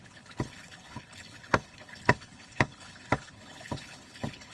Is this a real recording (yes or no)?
no